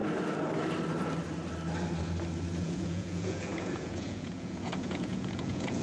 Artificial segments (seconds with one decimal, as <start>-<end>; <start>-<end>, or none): 2.6-5.8